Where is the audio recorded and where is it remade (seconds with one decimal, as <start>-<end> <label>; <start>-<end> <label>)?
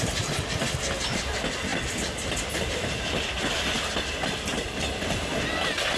0.0-1.7 recorded; 1.7-5.0 remade; 5.0-6.0 recorded